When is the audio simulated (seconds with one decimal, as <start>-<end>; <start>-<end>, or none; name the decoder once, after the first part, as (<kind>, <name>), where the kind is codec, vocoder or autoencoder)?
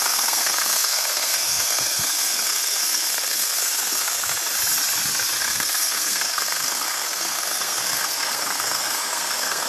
0.0-4.3 (codec, SNAC); 5.4-9.7